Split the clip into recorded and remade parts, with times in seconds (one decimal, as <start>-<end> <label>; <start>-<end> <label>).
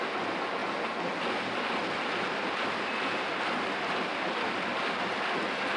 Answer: 0.0-5.8 recorded